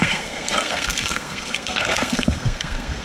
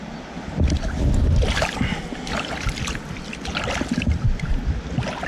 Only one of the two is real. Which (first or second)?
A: second